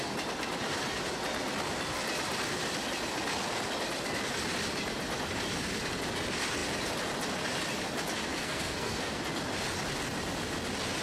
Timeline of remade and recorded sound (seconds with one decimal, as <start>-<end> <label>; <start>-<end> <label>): 0.0-8.4 recorded; 8.4-9.2 remade; 9.2-11.0 recorded